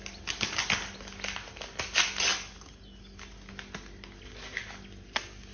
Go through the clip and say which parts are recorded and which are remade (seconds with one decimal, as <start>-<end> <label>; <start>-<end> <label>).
0.0-5.5 recorded